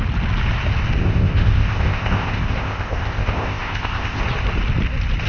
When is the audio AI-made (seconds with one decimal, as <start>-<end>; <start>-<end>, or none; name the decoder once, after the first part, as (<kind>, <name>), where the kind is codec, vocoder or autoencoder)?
1.0-4.2 (codec, ZipCodec)